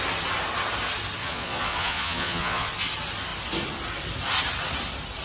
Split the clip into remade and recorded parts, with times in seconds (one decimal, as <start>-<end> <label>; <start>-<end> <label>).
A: 0.0-1.2 recorded; 1.2-2.7 remade; 2.7-5.2 recorded